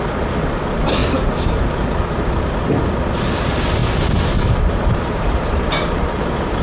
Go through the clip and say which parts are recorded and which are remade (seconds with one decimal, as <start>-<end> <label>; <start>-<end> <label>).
0.0-1.0 recorded; 1.0-2.8 remade; 2.8-3.8 recorded; 3.8-6.6 remade